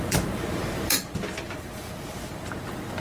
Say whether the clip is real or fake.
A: fake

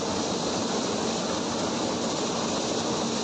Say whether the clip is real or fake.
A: real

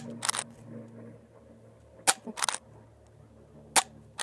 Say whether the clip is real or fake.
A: real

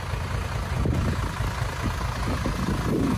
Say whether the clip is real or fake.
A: real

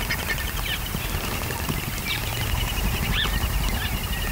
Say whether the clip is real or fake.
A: fake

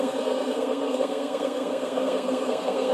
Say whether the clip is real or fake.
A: fake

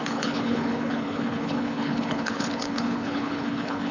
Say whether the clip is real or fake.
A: fake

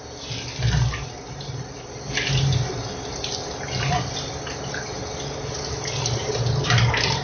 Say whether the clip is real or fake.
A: real